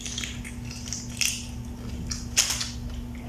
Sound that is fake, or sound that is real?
real